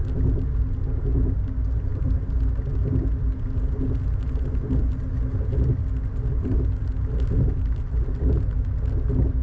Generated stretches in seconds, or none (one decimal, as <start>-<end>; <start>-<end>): none